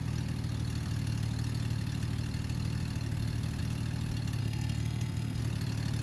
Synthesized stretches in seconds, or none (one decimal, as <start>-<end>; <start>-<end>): 4.4-5.4